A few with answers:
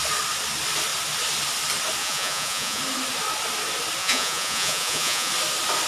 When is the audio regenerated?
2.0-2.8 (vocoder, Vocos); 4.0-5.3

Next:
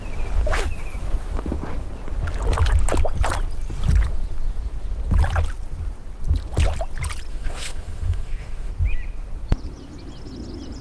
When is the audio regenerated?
7.3-8.7 (autoencoder, DAC-VAE)

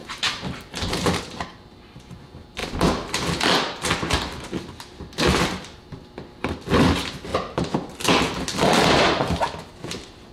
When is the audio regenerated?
0.0-1.2 (vocoder, BigVGAN v2)

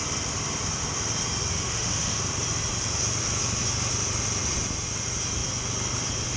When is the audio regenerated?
1.5-2.2 (autoencoder, DAC-VAE)

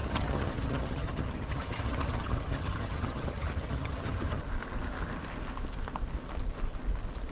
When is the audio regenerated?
0.0-4.4 (vocoder, HiFi-GAN)

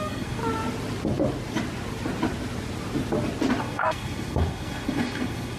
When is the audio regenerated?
0.0-0.4 (codec, SNAC); 3.6-5.6

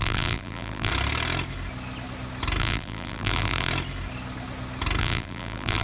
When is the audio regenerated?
0.0-0.9 (vocoder, BigVGAN v2); 2.6-3.7; 5.0-5.8

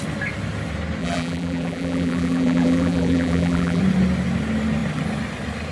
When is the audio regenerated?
1.0-3.8 (vocoder, BigVGAN v2)